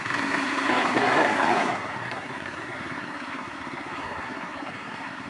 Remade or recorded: remade